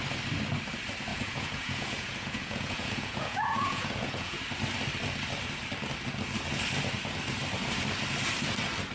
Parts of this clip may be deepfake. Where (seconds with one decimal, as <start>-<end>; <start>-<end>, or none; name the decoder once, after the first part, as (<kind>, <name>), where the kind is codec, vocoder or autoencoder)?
1.1-4.4 (vocoder, Vocos)